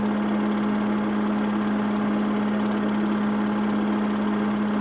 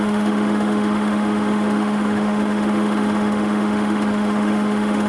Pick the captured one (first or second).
first